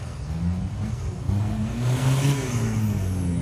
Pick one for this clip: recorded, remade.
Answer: remade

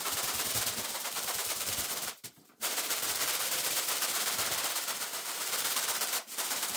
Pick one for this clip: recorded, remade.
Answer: remade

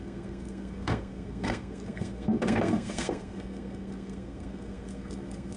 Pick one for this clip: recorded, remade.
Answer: remade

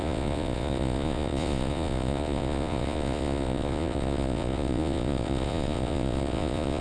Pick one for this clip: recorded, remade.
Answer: remade